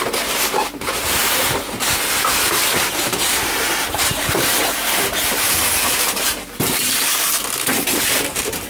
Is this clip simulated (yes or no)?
yes